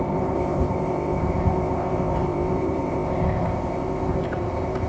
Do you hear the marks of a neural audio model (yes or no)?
yes